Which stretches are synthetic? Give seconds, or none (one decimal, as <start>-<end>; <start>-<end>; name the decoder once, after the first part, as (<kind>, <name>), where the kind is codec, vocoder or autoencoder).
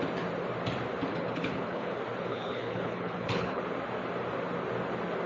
1.1-1.9 (codec, HILCodec); 2.3-3.6